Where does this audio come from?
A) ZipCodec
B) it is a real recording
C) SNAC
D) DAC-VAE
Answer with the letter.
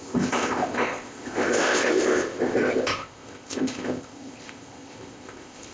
A